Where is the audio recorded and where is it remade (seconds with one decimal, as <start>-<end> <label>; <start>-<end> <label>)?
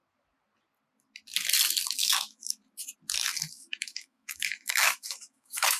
0.0-2.0 recorded; 2.0-2.6 remade; 2.6-3.5 recorded; 3.5-5.8 remade